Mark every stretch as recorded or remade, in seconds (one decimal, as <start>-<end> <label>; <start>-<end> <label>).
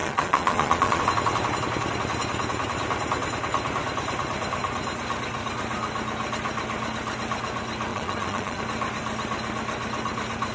0.0-1.0 remade; 1.0-7.9 recorded; 7.9-8.6 remade; 8.6-10.5 recorded